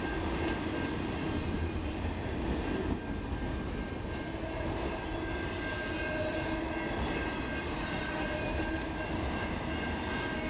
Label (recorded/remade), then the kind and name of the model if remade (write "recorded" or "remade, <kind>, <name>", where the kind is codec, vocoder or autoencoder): recorded